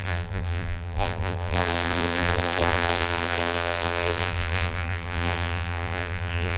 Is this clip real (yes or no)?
no